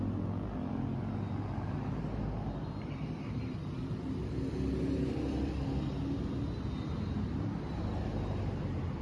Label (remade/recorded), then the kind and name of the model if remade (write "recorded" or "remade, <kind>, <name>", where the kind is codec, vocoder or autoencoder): recorded